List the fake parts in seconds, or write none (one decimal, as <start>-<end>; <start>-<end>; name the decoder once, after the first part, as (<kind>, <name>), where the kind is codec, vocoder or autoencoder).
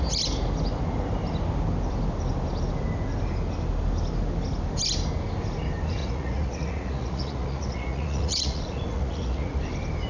6.0-9.6 (vocoder, Vocos)